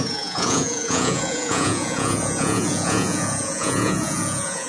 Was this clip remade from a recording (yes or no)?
yes